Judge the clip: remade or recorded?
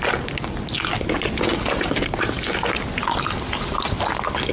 recorded